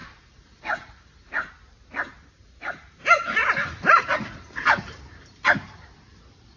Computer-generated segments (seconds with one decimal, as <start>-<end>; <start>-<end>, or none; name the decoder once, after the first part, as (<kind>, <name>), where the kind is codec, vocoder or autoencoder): 0.0-1.5 (vocoder, Vocos)